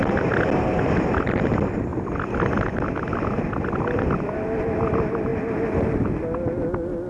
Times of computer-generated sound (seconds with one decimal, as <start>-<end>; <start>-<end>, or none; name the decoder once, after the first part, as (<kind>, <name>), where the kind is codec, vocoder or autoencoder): 1.9-4.3 (vocoder, BigVGAN v2)